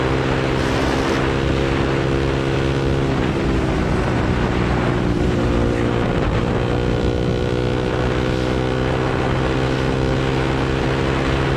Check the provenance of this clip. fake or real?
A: real